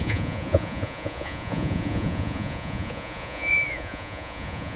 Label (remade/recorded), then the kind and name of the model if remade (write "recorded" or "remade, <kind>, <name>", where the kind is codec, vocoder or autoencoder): remade, vocoder, Vocos